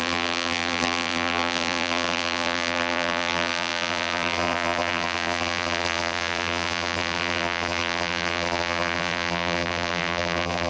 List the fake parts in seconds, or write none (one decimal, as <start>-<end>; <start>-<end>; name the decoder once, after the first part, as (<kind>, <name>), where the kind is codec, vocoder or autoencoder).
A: 0.0-10.7 (vocoder, BigVGAN v2)